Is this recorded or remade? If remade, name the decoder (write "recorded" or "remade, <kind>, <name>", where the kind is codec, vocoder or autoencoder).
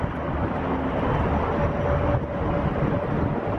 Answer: recorded